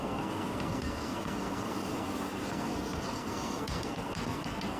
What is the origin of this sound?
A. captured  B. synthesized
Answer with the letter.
B